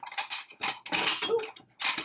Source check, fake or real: real